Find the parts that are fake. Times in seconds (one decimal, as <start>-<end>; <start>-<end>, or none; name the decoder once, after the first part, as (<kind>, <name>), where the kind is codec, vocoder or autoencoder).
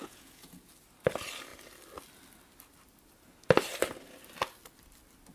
0.0-0.7 (vocoder, Vocos)